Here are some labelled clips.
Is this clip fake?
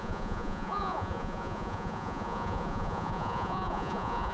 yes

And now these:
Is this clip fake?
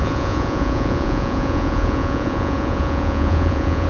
yes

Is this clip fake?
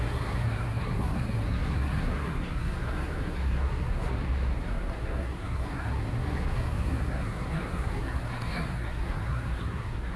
yes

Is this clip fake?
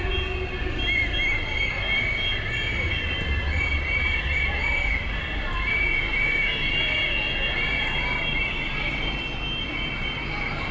no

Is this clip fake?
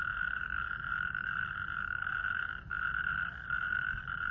yes